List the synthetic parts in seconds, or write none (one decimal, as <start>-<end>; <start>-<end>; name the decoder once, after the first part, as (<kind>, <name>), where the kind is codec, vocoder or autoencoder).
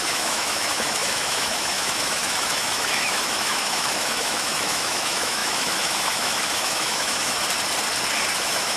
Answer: 0.0-7.4 (autoencoder, DAC-VAE); 8.4-8.8